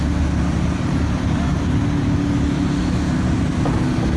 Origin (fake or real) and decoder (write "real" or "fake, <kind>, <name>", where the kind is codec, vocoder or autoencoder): real